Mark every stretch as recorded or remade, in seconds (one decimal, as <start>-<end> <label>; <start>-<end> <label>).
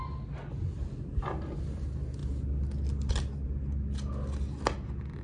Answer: 0.0-5.2 recorded